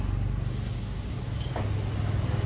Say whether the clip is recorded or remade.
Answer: recorded